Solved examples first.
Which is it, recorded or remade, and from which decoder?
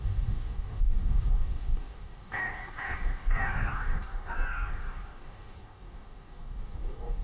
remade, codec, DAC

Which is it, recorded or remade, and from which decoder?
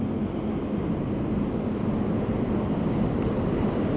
recorded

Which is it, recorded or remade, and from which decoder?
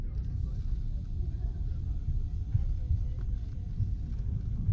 recorded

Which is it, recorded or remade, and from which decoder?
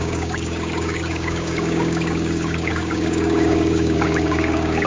remade, codec, DAC